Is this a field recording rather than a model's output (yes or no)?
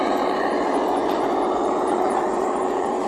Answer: no